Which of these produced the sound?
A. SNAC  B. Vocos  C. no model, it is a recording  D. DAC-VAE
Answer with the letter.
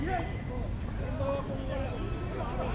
C